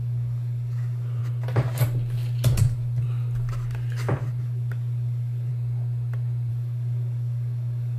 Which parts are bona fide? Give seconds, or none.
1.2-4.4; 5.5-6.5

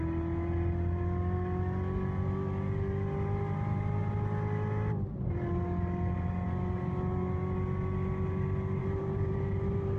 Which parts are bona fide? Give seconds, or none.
0.0-8.8